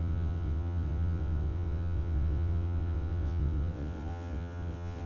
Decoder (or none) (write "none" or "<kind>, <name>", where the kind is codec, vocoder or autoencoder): vocoder, WaveNeXt